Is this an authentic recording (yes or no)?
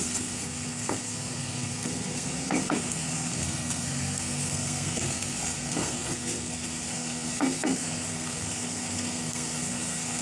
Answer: no